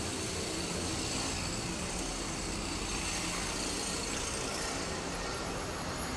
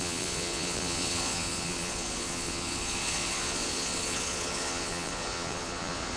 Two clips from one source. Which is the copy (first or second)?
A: second